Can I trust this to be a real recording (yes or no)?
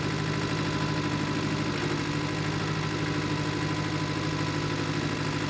yes